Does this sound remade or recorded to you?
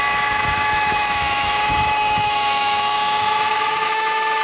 remade